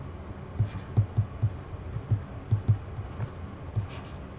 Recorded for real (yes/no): yes